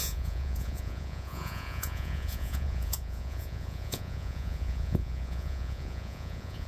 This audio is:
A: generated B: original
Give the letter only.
A